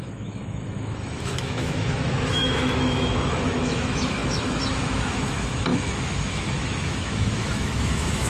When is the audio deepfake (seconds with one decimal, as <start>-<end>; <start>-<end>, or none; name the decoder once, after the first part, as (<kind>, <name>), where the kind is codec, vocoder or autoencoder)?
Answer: 0.0-8.3 (autoencoder, DAC-VAE)